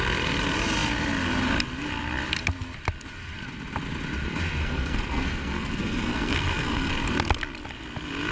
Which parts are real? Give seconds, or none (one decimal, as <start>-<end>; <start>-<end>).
0.0-4.6; 6.9-8.3